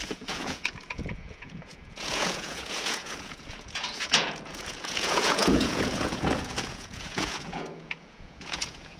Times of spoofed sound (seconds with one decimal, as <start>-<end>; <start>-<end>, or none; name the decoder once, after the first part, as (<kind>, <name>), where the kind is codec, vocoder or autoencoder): 0.0-9.0 (vocoder, Vocos)